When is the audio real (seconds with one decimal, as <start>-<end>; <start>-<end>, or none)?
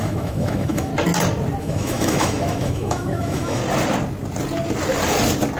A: 0.9-1.6; 3.6-5.6